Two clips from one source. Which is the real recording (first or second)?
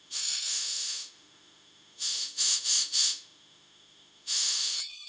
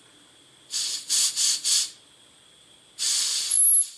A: second